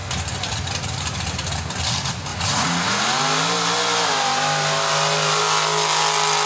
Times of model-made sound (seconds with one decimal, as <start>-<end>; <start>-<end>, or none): 2.3-3.0